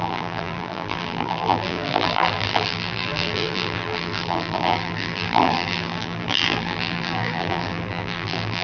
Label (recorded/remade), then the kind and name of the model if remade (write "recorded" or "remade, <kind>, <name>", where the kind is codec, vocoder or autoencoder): remade, vocoder, BigVGAN v2